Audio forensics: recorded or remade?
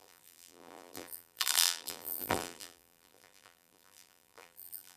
remade